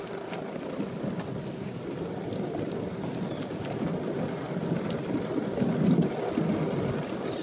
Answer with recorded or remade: recorded